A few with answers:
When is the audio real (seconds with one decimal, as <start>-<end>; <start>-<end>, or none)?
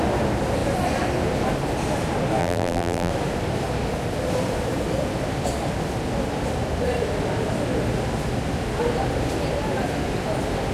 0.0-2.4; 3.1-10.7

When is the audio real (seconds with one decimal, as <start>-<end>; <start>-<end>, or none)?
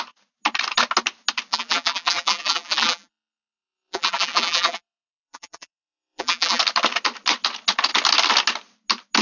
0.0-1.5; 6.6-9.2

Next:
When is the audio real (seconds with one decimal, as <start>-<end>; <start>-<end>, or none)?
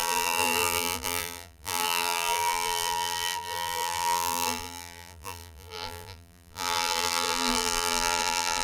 none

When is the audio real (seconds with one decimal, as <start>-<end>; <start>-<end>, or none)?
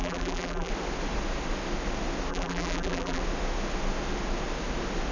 0.7-2.3; 3.2-5.1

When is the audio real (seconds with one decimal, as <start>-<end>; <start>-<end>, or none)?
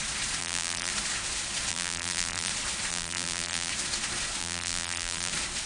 0.0-0.4; 0.9-1.7; 2.5-2.9; 3.7-4.4; 5.3-5.7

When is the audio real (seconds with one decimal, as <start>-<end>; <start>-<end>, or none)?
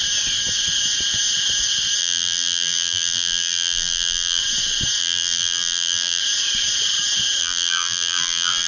0.0-2.0; 4.4-5.0; 6.2-7.4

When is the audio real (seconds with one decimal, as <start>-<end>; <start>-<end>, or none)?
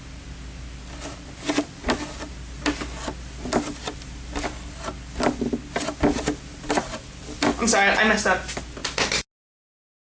0.0-10.1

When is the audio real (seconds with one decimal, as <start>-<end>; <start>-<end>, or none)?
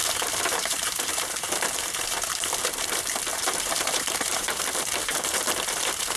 2.5-3.3; 4.6-5.0